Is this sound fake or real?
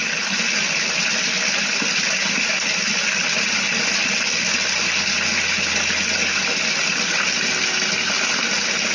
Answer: real